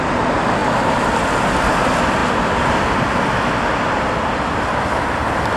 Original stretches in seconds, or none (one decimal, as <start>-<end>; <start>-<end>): 0.0-5.6

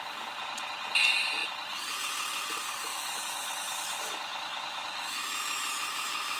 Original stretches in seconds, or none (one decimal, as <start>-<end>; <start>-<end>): 0.0-2.9

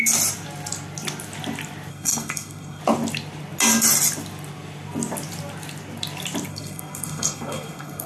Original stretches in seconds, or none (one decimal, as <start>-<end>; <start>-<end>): 0.0-1.9; 2.8-6.5

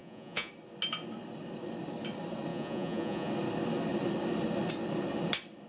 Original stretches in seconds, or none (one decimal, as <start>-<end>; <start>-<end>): 0.5-2.5; 3.3-5.7

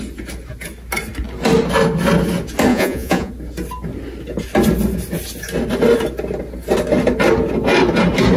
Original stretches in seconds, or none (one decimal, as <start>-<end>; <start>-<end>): 0.0-2.7; 3.3-8.4

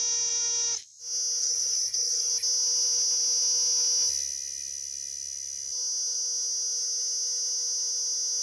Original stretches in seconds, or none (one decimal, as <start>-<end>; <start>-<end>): 0.0-1.4; 2.3-8.4

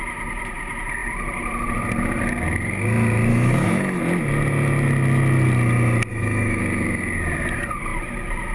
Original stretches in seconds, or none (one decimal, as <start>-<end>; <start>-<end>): 0.0-3.3; 4.0-6.1; 6.6-8.5

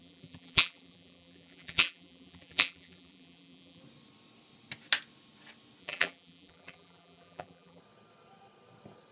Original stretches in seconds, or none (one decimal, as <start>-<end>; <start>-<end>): 3.8-5.8; 7.8-9.1